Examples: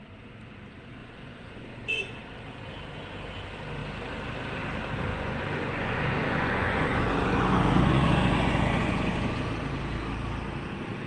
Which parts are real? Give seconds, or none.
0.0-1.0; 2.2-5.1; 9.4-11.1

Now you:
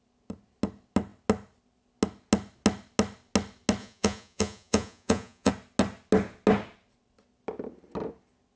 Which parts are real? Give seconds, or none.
0.0-3.8; 5.5-8.6